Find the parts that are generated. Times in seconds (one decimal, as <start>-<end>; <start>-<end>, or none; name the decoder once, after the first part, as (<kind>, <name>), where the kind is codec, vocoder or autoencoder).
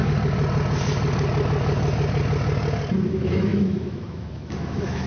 3.1-5.1 (autoencoder, DAC-VAE)